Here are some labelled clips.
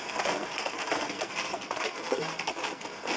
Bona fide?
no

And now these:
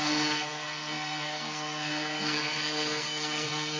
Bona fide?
no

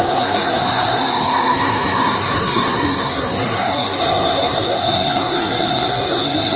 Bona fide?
no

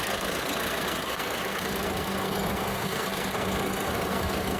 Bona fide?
no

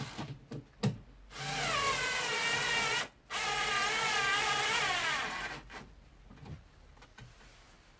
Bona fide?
yes